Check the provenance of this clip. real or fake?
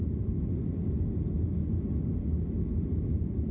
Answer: real